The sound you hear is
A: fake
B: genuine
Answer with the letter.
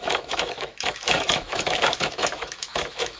A